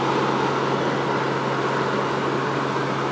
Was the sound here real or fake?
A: real